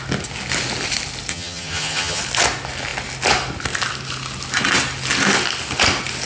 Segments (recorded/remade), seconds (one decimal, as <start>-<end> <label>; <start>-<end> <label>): 0.0-1.3 recorded; 1.3-2.2 remade; 2.2-6.3 recorded